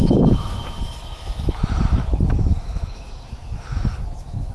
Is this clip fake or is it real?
fake